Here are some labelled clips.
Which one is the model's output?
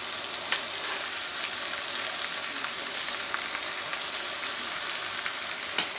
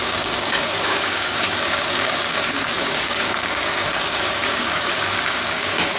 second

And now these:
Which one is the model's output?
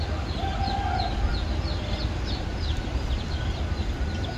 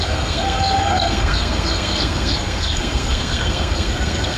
second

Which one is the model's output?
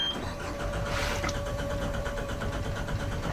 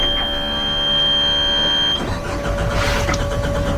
first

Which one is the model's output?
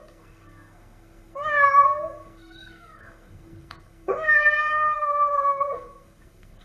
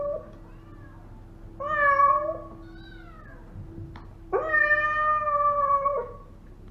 first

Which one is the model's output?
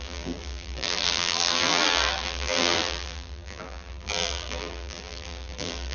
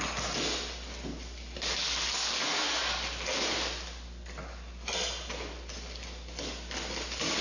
first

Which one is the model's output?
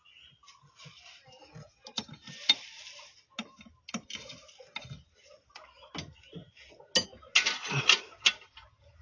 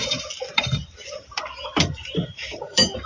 second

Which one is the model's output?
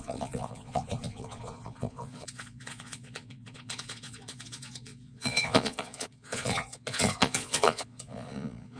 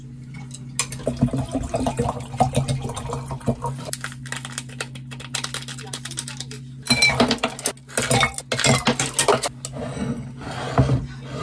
first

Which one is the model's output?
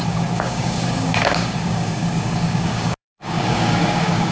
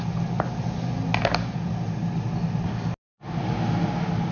first